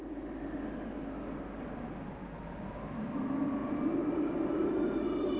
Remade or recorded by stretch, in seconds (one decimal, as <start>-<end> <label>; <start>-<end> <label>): 0.0-5.4 recorded